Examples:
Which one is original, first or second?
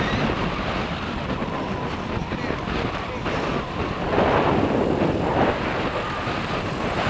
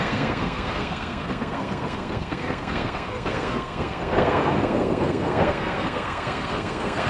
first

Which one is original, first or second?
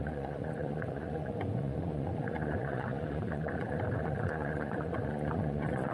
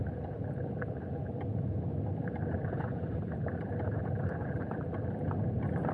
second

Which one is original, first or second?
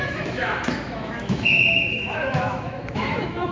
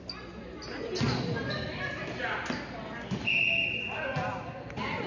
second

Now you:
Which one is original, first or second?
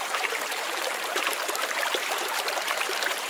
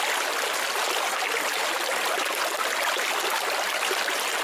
second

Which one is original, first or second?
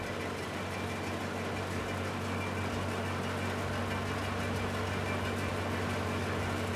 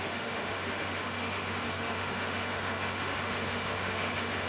first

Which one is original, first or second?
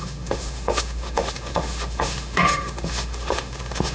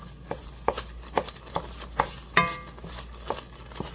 second